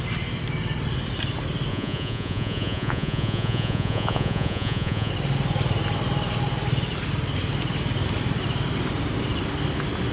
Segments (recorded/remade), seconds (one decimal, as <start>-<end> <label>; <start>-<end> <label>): 0.0-1.7 recorded; 1.7-5.1 remade; 5.1-10.1 recorded